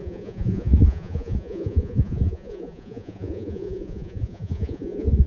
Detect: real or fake fake